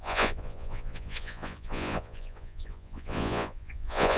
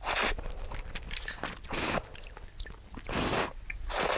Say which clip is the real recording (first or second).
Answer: second